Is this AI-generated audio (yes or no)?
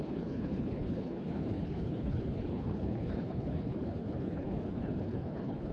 yes